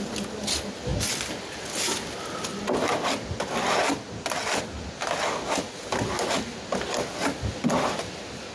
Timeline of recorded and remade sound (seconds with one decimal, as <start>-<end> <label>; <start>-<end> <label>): 0.0-8.5 recorded